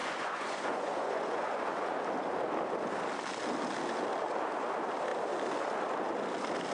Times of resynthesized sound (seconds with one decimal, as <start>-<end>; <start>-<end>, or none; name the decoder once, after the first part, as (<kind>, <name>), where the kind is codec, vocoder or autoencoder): 0.0-1.9 (vocoder, Vocos)